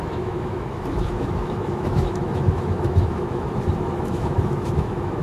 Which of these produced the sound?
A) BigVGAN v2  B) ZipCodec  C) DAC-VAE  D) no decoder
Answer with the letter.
C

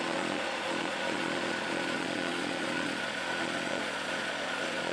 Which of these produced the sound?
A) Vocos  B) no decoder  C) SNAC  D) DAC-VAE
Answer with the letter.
A